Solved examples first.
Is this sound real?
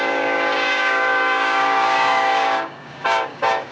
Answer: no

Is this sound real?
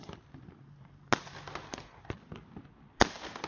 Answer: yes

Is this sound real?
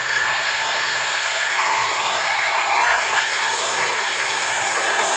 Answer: no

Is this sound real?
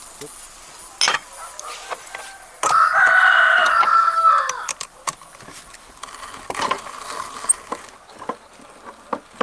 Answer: yes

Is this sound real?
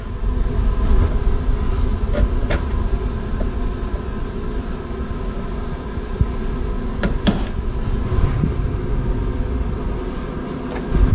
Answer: yes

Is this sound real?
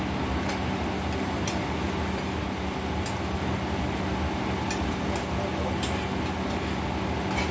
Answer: yes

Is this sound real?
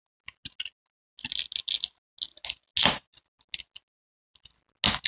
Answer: yes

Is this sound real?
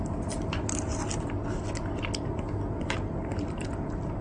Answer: yes